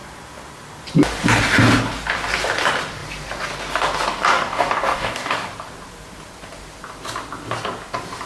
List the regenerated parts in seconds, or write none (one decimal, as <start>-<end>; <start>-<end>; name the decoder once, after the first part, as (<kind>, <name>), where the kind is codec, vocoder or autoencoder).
4.3-5.5 (codec, DAC)